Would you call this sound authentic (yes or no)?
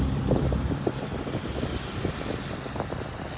no